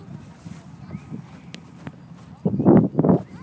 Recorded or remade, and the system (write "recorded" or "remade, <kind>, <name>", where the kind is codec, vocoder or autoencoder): recorded